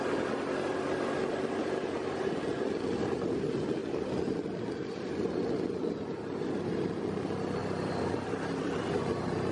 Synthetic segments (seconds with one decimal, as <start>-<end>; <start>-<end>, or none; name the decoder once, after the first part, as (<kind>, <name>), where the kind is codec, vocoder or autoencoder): 7.6-8.8 (vocoder, BigVGAN v2)